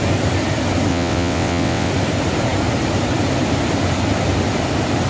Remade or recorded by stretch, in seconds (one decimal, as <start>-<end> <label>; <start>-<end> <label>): 0.0-0.9 recorded; 0.9-1.9 remade; 1.9-5.1 recorded